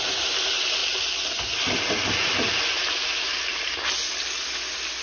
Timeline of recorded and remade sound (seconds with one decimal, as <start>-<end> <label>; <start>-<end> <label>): 0.0-5.0 recorded